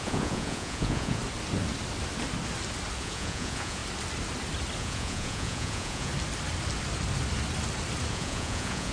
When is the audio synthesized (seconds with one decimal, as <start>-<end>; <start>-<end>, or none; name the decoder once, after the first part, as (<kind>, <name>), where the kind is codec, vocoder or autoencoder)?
0.0-1.2 (vocoder, Vocos); 3.0-3.8; 4.8-6.1; 8.1-8.9